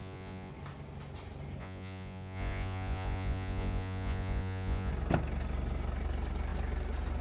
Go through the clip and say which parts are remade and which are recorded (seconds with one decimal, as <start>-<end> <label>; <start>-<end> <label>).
0.0-0.5 remade; 0.5-1.6 recorded; 1.6-4.9 remade; 4.9-7.2 recorded